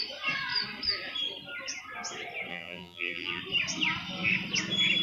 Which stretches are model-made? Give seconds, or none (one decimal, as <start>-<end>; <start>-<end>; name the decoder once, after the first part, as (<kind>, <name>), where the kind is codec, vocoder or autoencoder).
2.5-3.4 (vocoder, BigVGAN v2)